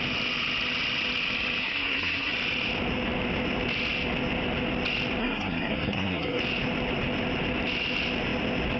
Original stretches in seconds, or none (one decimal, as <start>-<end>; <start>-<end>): 0.0-1.6; 2.3-5.2; 6.4-8.8